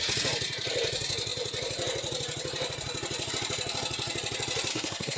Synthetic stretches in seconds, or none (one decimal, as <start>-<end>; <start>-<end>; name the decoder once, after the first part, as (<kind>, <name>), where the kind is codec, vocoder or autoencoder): 4.7-5.2 (codec, SNAC)